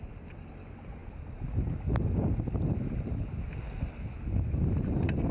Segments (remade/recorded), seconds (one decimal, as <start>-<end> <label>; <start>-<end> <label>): 0.0-5.3 recorded